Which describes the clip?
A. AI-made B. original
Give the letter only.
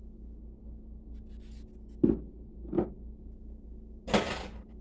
B